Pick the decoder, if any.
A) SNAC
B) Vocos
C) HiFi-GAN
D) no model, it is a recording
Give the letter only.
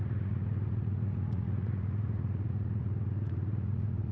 B